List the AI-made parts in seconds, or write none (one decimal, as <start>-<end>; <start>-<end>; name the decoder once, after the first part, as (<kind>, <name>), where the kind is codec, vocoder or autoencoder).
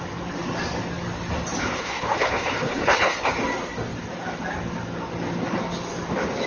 1.6-3.3 (codec, HILCodec)